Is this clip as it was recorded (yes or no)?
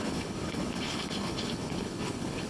no